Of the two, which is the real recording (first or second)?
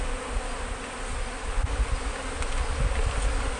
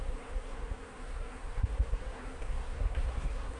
first